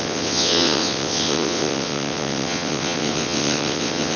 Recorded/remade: remade